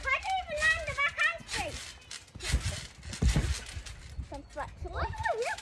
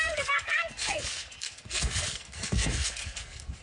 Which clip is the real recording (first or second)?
first